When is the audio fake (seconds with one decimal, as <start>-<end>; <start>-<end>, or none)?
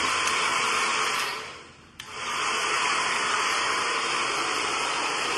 none